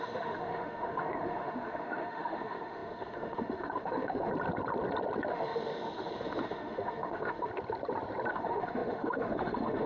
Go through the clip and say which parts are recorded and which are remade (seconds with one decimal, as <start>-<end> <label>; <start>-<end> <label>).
0.0-4.3 remade; 4.3-5.3 recorded; 5.3-7.5 remade; 7.5-8.3 recorded; 8.3-9.9 remade